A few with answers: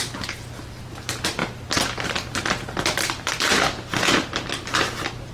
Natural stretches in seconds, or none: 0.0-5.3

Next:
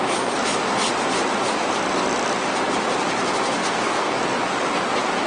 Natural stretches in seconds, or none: 0.0-3.6; 4.2-5.3

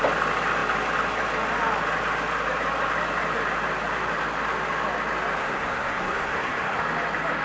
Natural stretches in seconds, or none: 0.0-5.4; 6.8-7.4

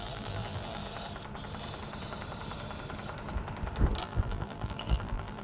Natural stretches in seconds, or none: 0.8-4.0

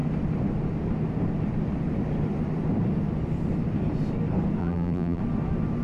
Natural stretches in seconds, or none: 0.0-4.6; 5.2-5.8

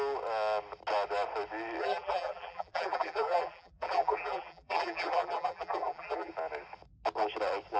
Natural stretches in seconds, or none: 0.0-1.8; 6.3-7.8

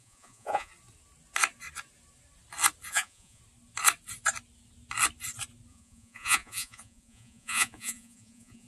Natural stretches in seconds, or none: 0.7-2.9; 3.4-5.7